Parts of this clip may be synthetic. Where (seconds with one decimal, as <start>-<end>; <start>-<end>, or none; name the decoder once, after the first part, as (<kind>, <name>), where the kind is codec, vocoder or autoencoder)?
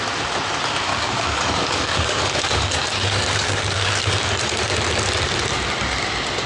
0.9-4.3 (codec, DAC)